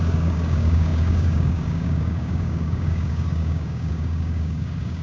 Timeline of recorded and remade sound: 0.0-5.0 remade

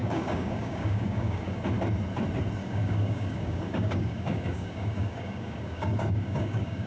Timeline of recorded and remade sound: 0.0-1.6 remade; 1.6-2.6 recorded; 2.6-6.9 remade

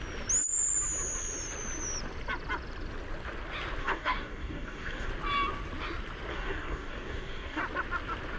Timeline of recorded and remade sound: 0.0-3.8 recorded; 3.8-5.1 remade; 5.1-6.3 recorded; 6.3-7.6 remade; 7.6-8.4 recorded

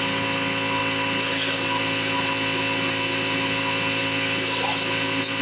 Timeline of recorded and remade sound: 0.0-5.4 recorded

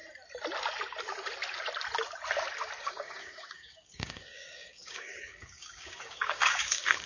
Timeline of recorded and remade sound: 0.0-2.8 recorded; 2.8-7.1 remade

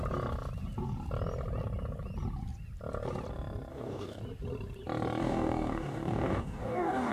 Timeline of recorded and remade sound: 0.0-3.7 recorded; 3.7-4.2 remade; 4.2-5.2 recorded; 5.2-7.1 remade